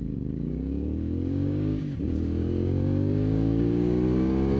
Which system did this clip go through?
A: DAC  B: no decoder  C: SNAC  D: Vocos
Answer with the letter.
A